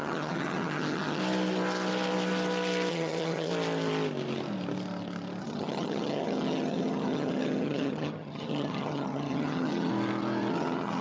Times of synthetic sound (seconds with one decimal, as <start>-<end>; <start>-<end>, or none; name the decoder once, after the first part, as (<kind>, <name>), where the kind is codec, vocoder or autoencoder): 0.0-1.2 (vocoder, HiFi-GAN); 2.9-3.5; 5.4-9.9; 10.5-11.0